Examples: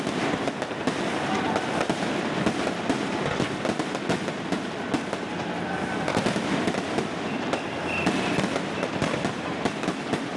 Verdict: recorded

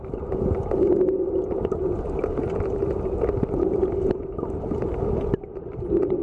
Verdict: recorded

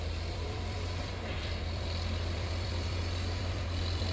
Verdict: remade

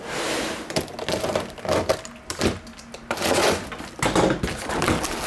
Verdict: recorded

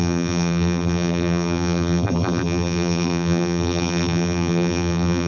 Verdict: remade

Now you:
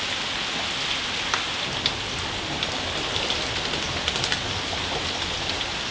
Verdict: recorded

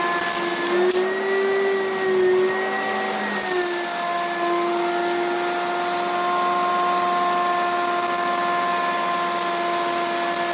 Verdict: recorded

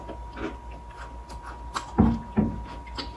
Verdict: recorded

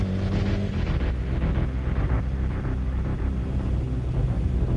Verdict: recorded